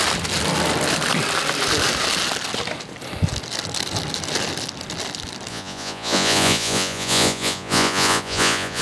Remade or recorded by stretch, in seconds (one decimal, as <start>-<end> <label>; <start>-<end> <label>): 0.0-5.5 recorded; 5.5-8.8 remade

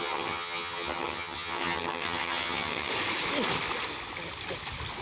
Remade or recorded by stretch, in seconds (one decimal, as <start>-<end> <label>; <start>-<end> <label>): 0.0-2.9 remade; 2.9-5.0 recorded

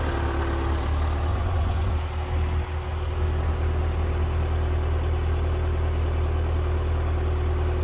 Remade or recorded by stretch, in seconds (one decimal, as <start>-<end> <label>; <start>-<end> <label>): 0.0-1.3 recorded; 1.3-1.9 remade; 1.9-7.8 recorded